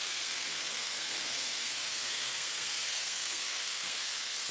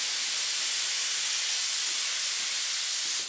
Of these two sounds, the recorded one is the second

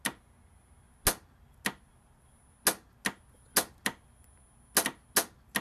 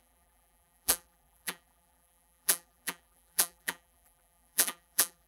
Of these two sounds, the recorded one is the first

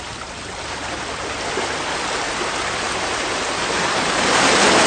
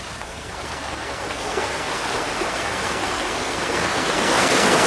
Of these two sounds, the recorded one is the first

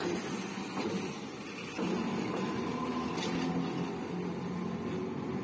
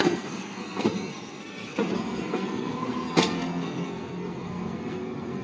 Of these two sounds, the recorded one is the first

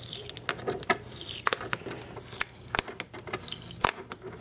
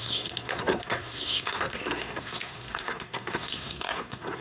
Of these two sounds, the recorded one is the first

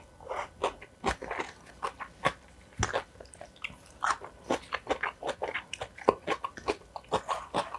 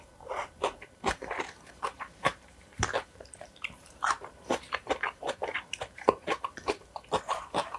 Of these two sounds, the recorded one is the first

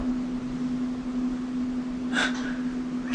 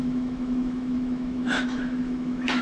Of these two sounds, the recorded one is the first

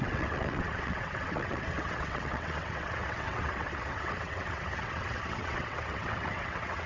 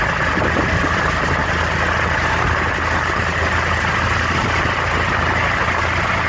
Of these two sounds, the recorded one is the second